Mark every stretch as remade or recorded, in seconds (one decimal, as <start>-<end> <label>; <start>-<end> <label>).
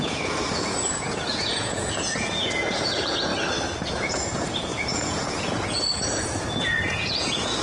0.0-3.3 remade; 3.3-4.1 recorded; 4.1-7.6 remade